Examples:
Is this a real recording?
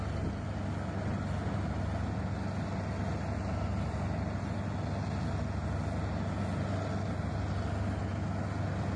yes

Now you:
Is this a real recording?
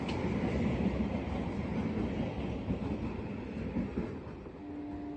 yes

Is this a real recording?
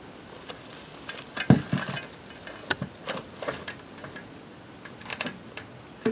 yes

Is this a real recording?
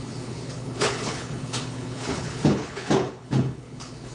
no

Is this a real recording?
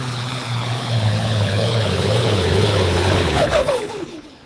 no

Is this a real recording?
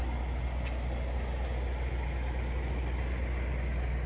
yes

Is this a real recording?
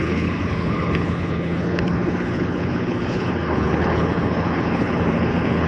no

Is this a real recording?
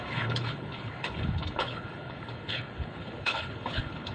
no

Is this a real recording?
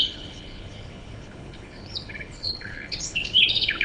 no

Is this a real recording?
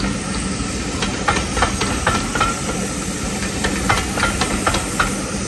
yes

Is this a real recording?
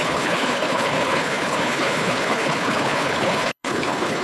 no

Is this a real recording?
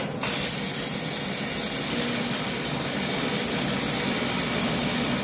yes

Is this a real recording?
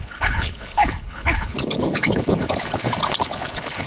no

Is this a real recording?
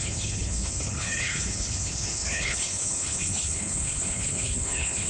no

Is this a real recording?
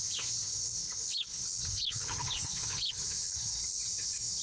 no